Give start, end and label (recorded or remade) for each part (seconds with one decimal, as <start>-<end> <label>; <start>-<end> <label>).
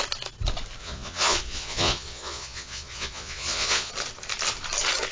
0.0-0.8 recorded; 0.8-3.9 remade; 3.9-5.1 recorded